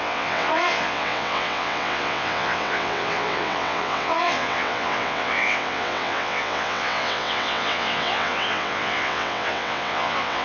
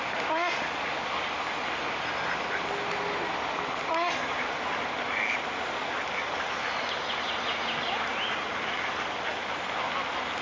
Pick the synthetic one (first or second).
first